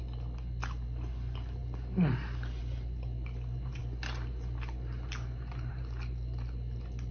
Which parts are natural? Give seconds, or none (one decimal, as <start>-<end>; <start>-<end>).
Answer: 0.0-7.1